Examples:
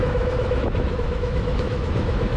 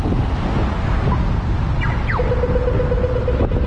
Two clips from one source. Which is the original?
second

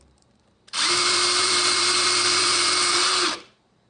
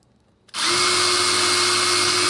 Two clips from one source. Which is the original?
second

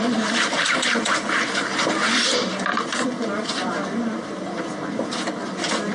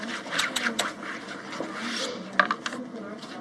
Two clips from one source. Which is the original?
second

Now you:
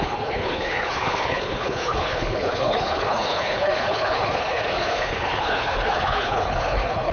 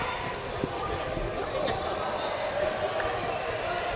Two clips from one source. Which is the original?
second